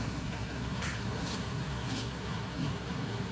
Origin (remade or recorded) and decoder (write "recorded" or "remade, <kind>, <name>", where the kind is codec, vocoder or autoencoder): remade, codec, SNAC